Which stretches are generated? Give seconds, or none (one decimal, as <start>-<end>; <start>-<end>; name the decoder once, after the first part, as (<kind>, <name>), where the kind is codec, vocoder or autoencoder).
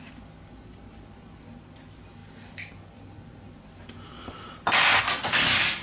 none